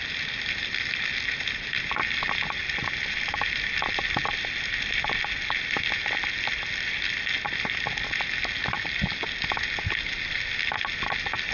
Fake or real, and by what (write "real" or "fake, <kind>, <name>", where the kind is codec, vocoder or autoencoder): real